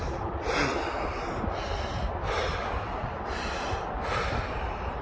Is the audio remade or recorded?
recorded